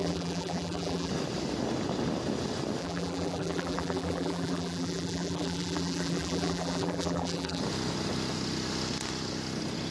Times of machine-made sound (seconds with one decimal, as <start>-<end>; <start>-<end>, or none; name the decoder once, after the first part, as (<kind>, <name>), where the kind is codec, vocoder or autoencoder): 0.0-1.1 (vocoder, BigVGAN v2); 2.8-7.6